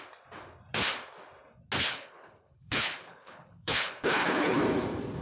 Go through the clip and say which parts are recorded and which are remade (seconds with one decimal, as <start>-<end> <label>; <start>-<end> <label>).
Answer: 0.0-1.8 recorded; 1.8-4.6 remade; 4.6-5.2 recorded